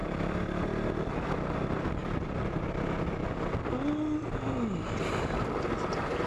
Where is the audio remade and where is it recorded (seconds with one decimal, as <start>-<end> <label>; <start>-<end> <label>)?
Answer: 0.0-6.3 recorded